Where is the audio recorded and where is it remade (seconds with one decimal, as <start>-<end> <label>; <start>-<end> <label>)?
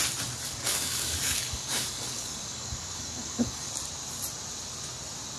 0.0-0.5 recorded; 0.5-3.7 remade; 3.7-5.4 recorded